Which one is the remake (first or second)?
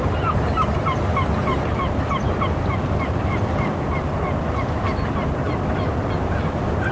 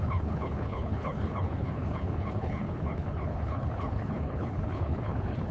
second